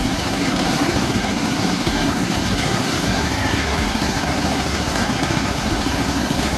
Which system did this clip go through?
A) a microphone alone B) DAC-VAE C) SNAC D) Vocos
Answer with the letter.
C